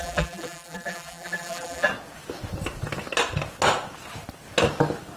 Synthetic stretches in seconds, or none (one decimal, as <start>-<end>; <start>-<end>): 0.0-1.9